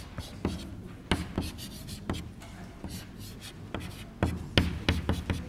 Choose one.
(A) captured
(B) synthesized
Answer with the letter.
A